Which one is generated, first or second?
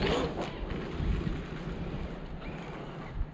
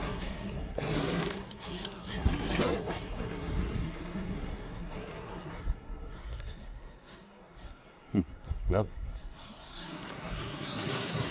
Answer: second